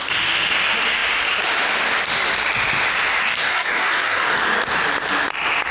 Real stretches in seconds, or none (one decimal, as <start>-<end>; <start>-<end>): 0.0-3.2; 4.4-5.7